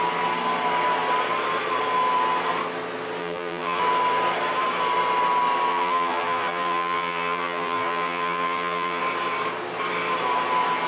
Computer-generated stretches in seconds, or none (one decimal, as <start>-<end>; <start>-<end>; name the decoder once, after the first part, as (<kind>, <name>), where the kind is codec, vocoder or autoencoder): 3.2-3.8 (vocoder, BigVGAN v2); 5.7-9.0